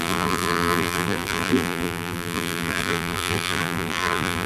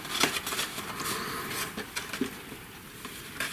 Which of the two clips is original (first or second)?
second